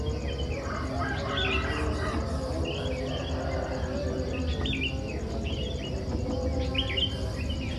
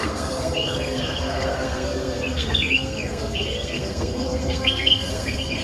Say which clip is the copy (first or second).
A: second